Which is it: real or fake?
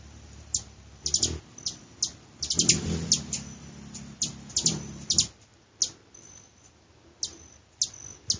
real